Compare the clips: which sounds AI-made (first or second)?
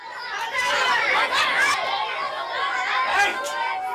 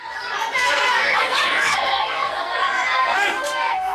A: second